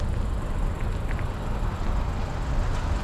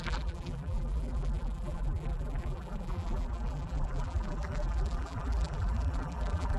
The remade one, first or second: second